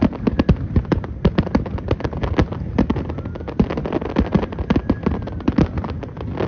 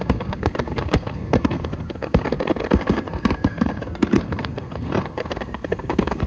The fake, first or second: second